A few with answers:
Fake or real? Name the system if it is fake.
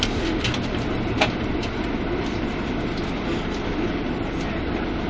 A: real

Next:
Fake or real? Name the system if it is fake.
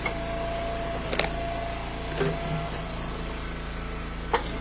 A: real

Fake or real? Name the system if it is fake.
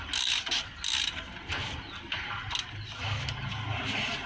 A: real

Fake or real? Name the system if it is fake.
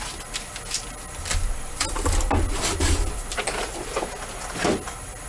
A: real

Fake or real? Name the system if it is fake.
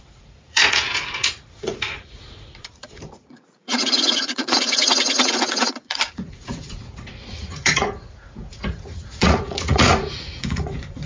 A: fake, vocoder, Vocos